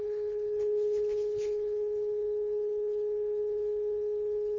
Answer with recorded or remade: remade